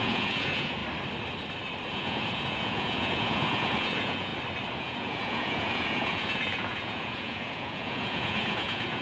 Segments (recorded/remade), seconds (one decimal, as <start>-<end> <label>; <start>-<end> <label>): 0.0-0.8 remade; 0.8-1.9 recorded; 1.9-4.3 remade; 4.3-4.8 recorded; 4.8-9.0 remade